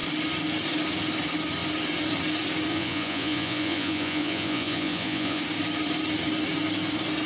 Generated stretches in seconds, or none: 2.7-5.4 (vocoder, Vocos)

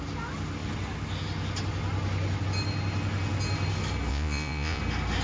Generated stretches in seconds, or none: 4.1-4.8 (vocoder, Vocos)

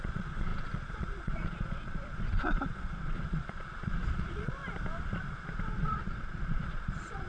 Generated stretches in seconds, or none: 0.0-4.6 (vocoder, Vocos); 5.7-7.3